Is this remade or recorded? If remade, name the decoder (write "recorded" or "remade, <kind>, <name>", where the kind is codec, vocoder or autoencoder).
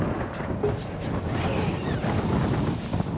recorded